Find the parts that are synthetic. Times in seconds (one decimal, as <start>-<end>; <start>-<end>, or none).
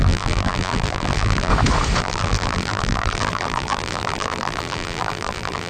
0.0-1.5; 2.0-5.7